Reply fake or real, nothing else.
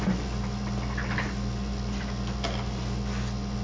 real